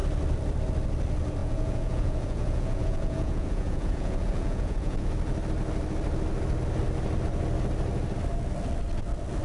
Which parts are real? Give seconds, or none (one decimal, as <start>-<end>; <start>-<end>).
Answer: 0.0-1.4; 5.1-9.4